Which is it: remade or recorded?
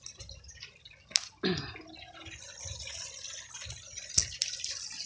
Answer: recorded